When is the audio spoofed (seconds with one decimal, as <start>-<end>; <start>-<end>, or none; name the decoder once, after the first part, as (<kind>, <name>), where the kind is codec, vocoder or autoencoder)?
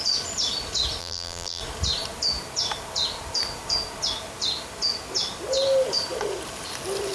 1.0-1.6 (vocoder, BigVGAN v2)